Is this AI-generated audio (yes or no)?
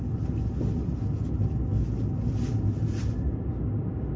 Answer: no